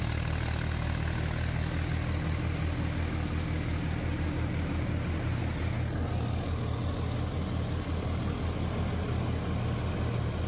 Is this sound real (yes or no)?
yes